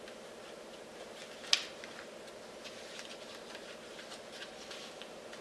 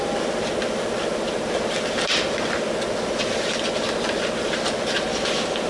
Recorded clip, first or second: first